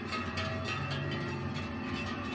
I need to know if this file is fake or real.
real